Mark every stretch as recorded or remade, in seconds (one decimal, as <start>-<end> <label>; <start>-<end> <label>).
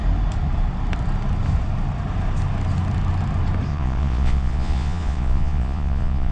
0.0-3.7 recorded; 3.7-6.3 remade